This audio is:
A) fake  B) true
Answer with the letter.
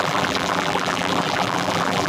A